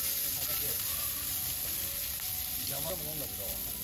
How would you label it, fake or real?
real